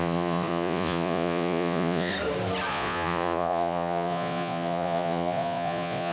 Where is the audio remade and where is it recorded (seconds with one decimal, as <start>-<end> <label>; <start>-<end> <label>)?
0.0-2.1 remade; 2.1-2.7 recorded; 2.7-6.1 remade